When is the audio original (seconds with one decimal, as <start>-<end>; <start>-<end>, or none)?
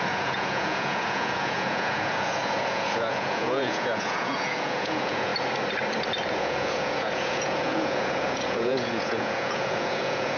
5.3-6.3